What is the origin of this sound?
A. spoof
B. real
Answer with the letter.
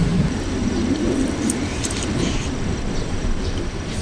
A